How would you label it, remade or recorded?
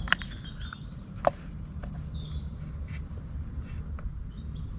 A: recorded